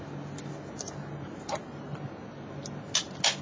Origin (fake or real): real